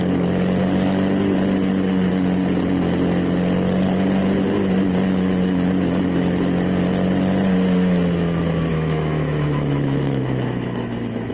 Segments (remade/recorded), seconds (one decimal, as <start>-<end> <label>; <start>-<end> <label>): 0.0-8.7 recorded; 8.7-11.3 remade